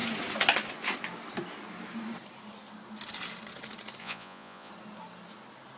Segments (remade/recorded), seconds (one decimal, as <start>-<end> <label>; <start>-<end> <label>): 0.0-4.0 recorded; 4.0-4.7 remade; 4.7-5.8 recorded